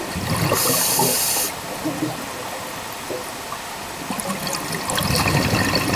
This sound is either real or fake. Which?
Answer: real